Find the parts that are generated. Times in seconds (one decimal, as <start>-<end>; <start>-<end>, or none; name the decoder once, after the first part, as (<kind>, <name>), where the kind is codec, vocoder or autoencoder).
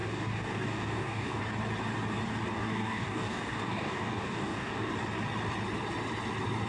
0.0-1.4 (codec, DAC); 2.5-4.9